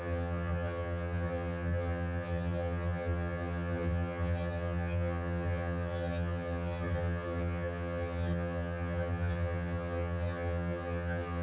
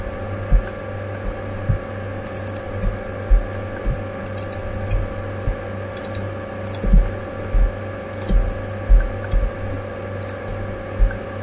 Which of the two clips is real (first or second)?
second